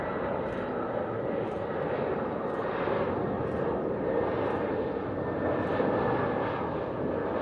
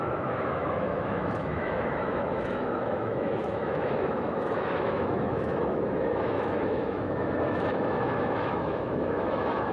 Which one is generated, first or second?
second